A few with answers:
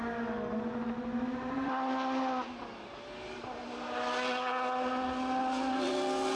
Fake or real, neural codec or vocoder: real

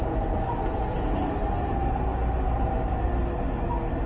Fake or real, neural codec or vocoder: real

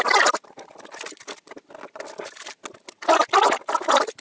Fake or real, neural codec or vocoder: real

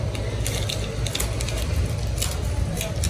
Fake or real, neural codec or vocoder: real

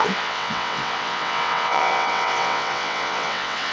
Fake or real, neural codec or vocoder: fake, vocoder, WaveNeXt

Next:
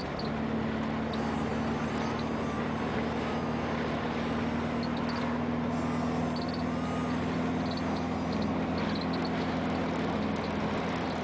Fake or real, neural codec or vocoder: real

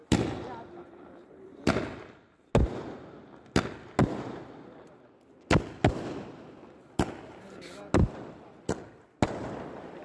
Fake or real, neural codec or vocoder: real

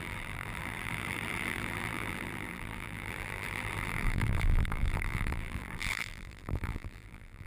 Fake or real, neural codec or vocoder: fake, vocoder, BigVGAN v2